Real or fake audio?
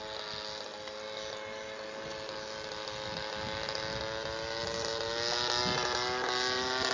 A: real